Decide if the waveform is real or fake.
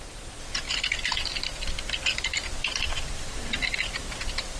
real